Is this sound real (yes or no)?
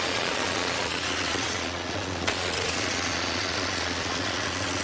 no